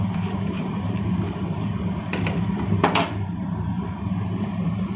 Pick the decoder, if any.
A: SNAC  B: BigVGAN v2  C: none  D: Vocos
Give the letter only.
B